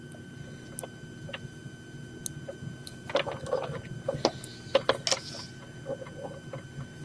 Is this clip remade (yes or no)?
no